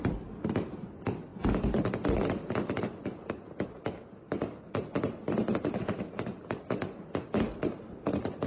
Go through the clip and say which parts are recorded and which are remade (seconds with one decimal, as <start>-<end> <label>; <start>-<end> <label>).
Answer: 0.0-8.5 recorded